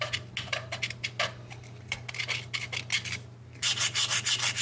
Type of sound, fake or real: real